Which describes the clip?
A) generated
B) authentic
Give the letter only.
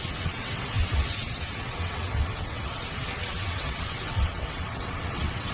A